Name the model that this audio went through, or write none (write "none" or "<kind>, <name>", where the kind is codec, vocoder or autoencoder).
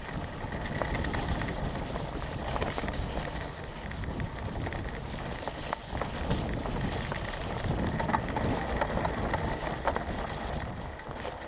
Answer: none